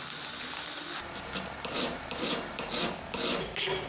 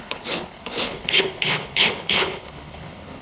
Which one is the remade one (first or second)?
second